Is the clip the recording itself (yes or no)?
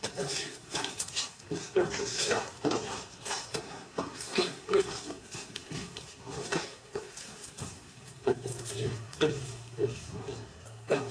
no